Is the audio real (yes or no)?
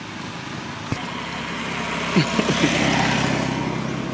yes